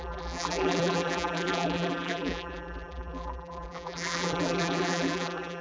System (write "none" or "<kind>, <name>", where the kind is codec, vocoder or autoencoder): vocoder, BigVGAN v2